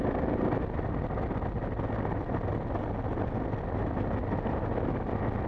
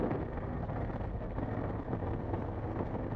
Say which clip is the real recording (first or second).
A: first